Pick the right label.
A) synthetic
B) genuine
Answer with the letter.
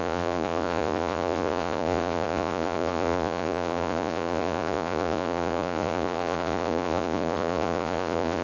A